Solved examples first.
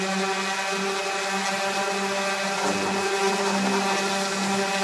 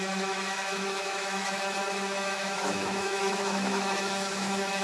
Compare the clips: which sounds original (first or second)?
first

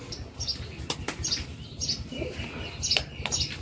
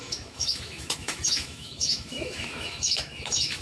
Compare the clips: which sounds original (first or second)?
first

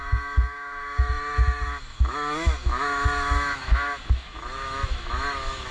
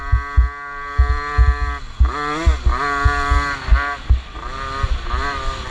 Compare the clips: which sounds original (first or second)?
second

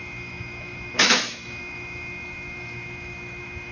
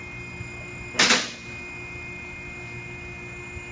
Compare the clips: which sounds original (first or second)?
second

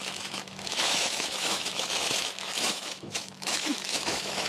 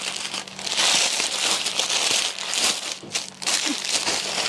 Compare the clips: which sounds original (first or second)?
second